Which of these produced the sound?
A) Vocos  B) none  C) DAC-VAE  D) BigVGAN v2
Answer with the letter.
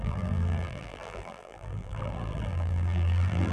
D